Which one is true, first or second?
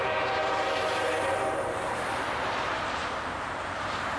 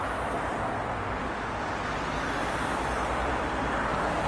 second